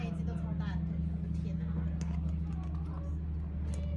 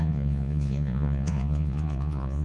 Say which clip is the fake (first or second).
second